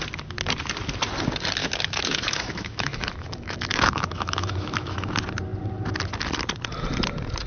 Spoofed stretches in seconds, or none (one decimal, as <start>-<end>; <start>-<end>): 1.6-5.1